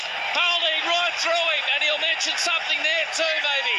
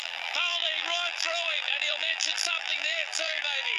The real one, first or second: first